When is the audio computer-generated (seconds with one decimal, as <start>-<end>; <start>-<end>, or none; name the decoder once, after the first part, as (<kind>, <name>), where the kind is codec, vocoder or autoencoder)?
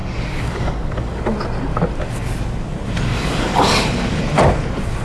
0.0-1.2 (codec, DAC); 3.1-4.2